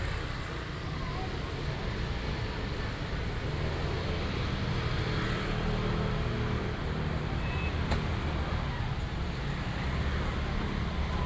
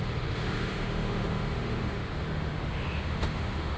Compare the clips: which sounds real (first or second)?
first